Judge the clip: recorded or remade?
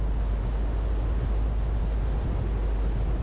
recorded